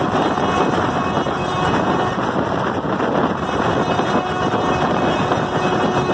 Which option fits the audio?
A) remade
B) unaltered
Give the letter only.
B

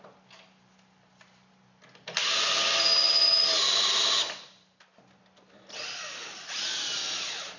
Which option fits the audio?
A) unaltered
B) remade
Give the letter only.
A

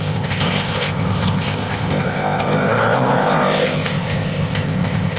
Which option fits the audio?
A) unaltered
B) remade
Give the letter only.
B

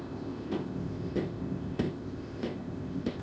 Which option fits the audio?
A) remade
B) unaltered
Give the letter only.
A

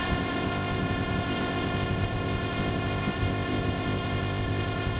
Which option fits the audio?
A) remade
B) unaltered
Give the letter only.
A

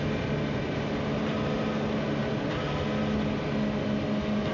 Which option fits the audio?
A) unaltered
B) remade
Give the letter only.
A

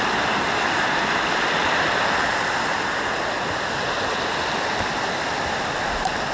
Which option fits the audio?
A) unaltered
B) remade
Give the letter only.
A